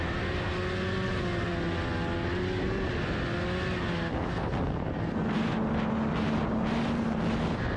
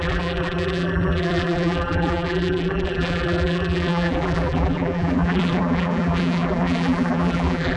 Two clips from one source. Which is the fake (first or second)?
second